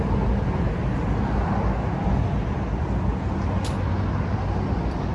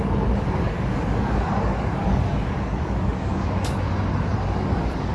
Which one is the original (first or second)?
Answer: first